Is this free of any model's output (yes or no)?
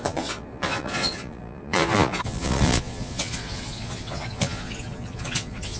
no